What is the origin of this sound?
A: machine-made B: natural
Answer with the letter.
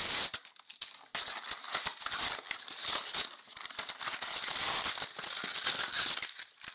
B